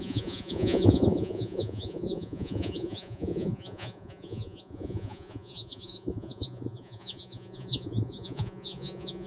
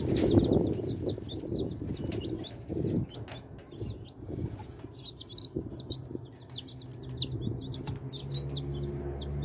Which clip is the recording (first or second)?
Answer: second